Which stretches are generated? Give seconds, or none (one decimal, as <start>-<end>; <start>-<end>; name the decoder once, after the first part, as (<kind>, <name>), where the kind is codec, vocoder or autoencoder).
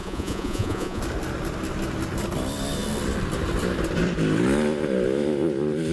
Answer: 0.0-1.0 (vocoder, Vocos)